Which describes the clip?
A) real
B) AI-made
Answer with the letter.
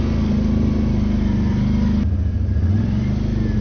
A